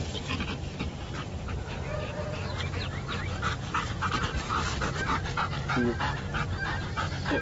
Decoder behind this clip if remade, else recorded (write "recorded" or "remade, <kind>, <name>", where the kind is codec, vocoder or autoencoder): recorded